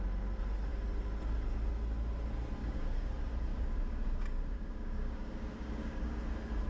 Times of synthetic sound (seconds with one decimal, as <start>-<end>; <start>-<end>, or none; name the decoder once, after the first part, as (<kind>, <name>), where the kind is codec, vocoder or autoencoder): 2.6-3.1 (codec, DAC); 3.5-6.2